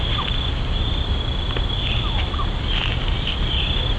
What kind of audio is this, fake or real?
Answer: real